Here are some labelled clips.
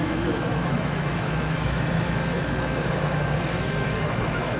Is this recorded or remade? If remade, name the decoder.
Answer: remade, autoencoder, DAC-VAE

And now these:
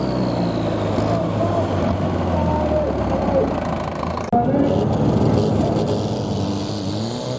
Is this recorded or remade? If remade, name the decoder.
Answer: recorded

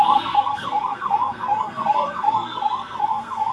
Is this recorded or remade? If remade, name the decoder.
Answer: remade, codec, SNAC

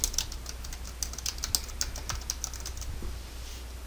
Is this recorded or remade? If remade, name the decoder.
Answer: recorded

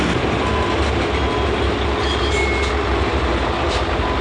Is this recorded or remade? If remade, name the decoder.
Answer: recorded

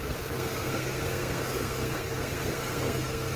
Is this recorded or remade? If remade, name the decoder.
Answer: remade, codec, SNAC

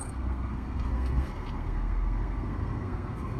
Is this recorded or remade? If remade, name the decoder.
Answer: remade, codec, SNAC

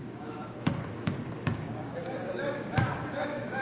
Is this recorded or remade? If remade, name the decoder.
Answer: remade, codec, DAC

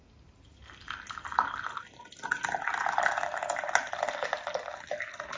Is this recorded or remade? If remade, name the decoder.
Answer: recorded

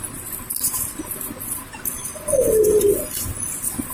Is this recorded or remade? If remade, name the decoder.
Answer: remade, vocoder, BigVGAN v2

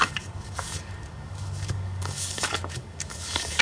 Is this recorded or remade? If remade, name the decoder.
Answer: remade, codec, DAC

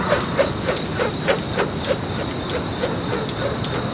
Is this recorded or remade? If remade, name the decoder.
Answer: recorded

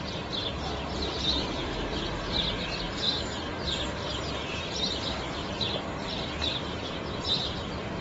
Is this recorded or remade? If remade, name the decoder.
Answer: recorded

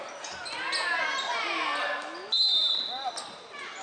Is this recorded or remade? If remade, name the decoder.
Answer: recorded